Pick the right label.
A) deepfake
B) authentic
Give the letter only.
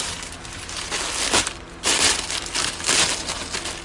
B